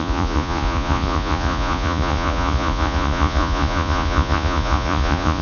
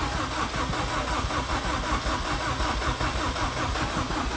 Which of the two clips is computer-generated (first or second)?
first